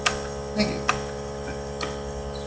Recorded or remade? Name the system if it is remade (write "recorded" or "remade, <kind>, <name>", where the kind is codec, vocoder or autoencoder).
recorded